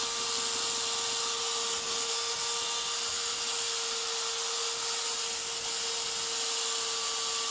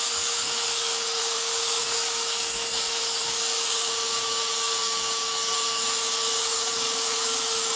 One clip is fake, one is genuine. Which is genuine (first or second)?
first